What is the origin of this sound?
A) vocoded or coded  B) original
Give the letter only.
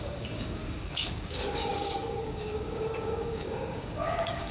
A